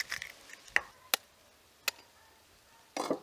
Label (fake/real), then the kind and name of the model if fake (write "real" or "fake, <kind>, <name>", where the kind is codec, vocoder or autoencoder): real